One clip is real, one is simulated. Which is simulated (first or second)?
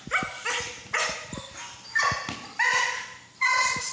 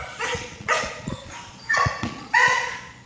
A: second